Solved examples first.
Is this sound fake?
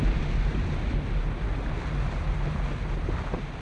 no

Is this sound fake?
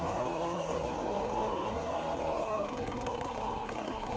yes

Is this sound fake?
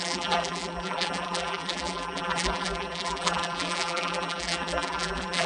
yes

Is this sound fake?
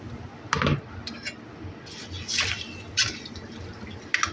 no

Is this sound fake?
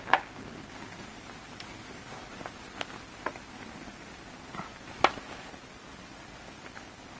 no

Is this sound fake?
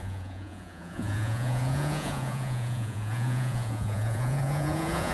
yes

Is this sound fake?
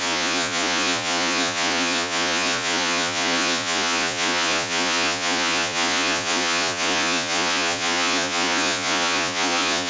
yes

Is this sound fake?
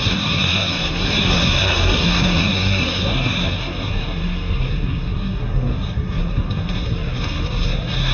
yes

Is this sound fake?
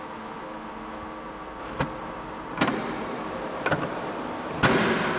no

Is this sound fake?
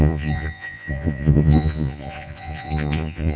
yes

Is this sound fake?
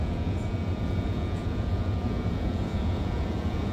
yes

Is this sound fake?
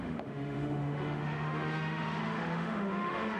yes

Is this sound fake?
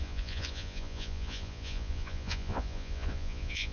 yes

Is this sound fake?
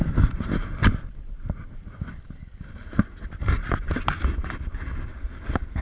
no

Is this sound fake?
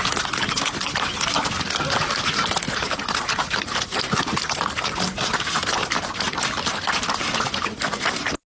no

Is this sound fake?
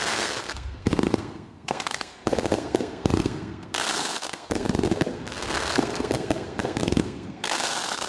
yes